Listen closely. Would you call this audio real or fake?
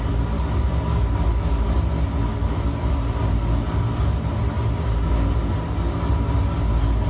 real